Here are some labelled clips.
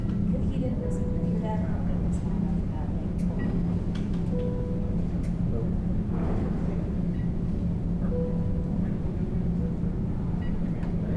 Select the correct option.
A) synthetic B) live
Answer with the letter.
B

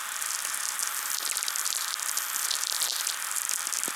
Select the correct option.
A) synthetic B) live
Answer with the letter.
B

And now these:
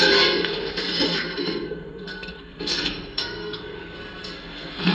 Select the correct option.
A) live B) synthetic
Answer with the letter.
B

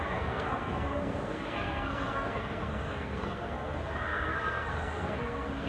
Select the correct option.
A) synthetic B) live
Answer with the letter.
A